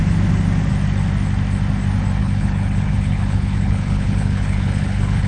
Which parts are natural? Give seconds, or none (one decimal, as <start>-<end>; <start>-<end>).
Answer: 0.0-2.2